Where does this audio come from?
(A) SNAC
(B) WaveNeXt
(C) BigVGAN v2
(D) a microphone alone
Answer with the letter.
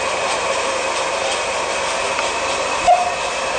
D